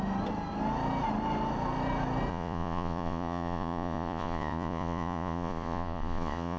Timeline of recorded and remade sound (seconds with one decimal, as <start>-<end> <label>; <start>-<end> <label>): 0.0-2.3 recorded; 2.3-6.6 remade